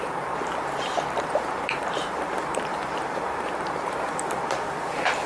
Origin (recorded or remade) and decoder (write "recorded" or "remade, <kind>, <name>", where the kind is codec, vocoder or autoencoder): remade, vocoder, BigVGAN v2